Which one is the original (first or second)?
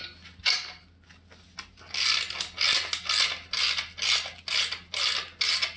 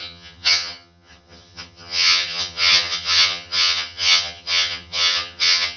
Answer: first